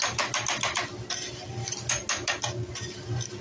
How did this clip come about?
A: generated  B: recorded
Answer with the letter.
B